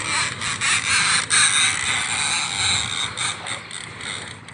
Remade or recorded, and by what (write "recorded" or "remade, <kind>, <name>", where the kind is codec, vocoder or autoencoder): recorded